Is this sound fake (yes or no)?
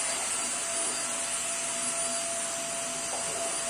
no